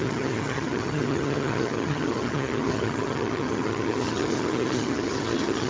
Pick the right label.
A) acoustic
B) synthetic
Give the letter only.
B